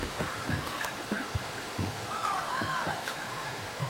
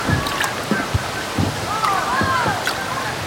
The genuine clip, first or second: second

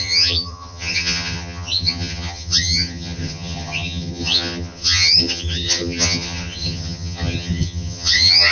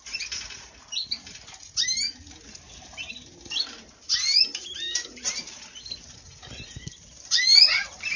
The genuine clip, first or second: second